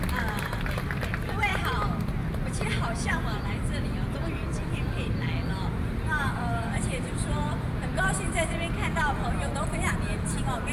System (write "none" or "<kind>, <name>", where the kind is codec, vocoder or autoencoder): none